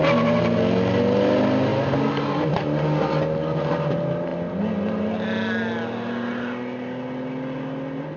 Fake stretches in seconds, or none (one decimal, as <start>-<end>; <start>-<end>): none